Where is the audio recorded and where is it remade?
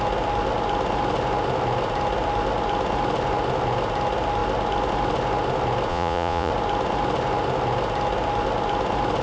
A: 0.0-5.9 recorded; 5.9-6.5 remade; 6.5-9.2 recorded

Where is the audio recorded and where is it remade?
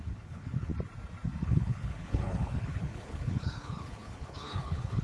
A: 0.0-0.7 remade; 0.7-1.4 recorded; 1.4-5.0 remade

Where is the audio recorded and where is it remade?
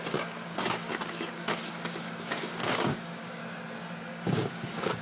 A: 0.0-3.4 remade; 3.4-4.1 recorded; 4.1-5.0 remade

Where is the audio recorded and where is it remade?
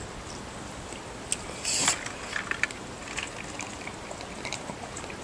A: 0.0-5.2 recorded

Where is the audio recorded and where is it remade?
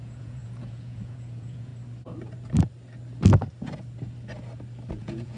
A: 0.0-1.7 remade; 1.7-4.9 recorded; 4.9-5.4 remade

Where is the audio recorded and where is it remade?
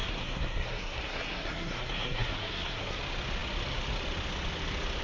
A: 0.0-3.0 remade; 3.0-5.0 recorded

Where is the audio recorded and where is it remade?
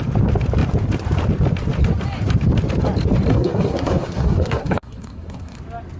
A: 0.0-3.3 recorded; 3.3-5.6 remade; 5.6-6.0 recorded